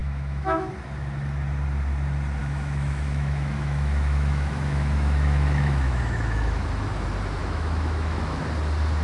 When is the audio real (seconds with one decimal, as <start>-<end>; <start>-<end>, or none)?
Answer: 0.7-2.4; 6.6-7.4; 8.4-9.0